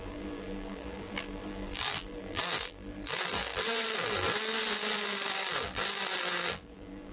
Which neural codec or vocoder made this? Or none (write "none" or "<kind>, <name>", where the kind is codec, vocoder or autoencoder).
vocoder, BigVGAN v2